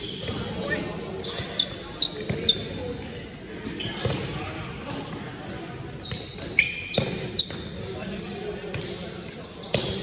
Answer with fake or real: real